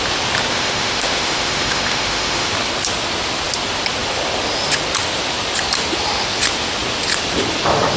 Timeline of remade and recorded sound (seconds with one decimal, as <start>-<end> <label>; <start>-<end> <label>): 0.0-0.5 recorded; 0.5-2.5 remade; 2.5-8.0 recorded